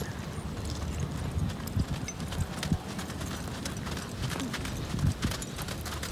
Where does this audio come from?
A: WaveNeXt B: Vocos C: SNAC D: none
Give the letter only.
D